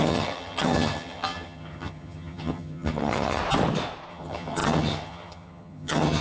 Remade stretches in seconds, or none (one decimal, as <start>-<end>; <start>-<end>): 0.0-3.4; 4.1-6.2